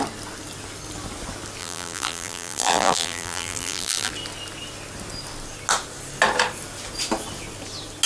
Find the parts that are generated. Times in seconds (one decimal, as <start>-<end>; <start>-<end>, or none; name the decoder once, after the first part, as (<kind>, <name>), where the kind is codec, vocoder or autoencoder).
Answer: 1.6-4.1 (vocoder, BigVGAN v2)